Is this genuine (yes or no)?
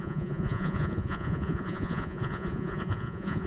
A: no